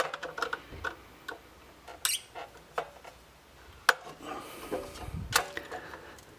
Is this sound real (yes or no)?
yes